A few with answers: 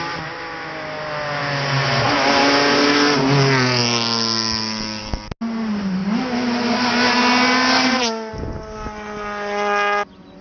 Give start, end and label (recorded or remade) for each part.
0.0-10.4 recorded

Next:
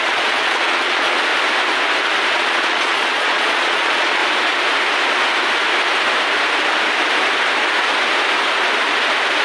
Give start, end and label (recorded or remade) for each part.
0.0-1.3 remade; 1.3-2.3 recorded; 2.3-4.2 remade; 4.2-9.4 recorded

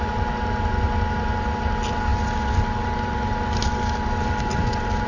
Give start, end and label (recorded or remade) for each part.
0.0-5.1 recorded

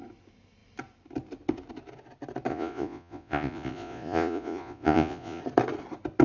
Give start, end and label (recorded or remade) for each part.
0.0-2.5 recorded; 2.5-5.4 remade; 5.4-6.2 recorded

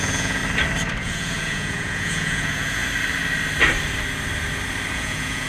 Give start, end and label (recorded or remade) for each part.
0.0-0.4 remade; 0.4-1.0 recorded; 1.0-2.8 remade; 2.8-4.9 recorded; 4.9-5.5 remade